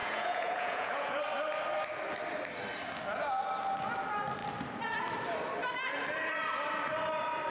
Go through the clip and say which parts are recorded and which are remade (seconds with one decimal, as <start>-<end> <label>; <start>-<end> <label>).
0.0-1.2 remade; 1.2-7.5 recorded